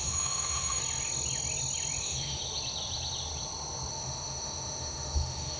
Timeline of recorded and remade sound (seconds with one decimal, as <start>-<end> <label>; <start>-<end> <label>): 0.0-0.8 remade; 0.8-2.0 recorded; 2.0-2.4 remade; 2.4-3.9 recorded; 3.9-5.6 remade